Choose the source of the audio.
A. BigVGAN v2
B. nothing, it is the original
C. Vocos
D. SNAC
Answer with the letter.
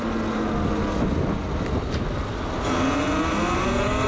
B